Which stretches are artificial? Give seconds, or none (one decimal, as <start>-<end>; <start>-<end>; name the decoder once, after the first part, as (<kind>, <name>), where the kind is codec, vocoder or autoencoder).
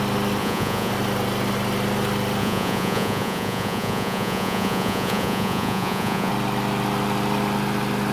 0.4-0.9 (vocoder, Vocos); 2.4-6.3